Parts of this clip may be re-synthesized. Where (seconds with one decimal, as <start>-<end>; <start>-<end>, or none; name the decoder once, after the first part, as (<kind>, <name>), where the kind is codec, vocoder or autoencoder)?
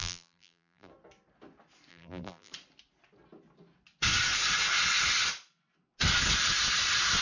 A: 0.0-0.9 (vocoder, BigVGAN v2); 1.9-2.5